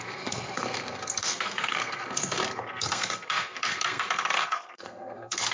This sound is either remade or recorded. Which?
remade